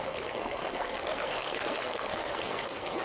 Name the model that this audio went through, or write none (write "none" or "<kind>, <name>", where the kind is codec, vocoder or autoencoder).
codec, SNAC